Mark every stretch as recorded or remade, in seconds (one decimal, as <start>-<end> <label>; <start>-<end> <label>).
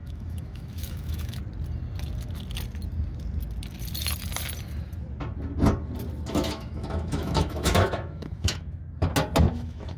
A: 0.0-1.4 remade; 1.4-6.3 recorded; 6.3-8.8 remade; 8.8-9.5 recorded; 9.5-10.0 remade